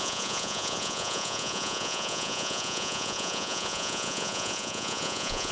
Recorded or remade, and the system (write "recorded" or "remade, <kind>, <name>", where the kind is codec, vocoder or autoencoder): remade, vocoder, Vocos